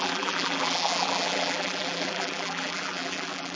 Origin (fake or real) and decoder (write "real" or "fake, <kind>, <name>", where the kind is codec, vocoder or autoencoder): fake, vocoder, BigVGAN v2